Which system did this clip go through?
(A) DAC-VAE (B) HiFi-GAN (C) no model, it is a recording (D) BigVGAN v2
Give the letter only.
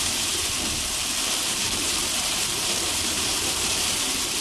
D